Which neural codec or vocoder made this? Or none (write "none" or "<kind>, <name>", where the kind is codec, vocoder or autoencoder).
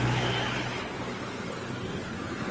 none